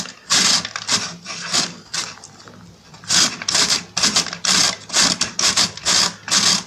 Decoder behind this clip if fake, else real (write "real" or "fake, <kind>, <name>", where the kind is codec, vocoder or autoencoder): real